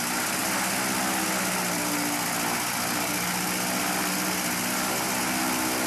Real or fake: real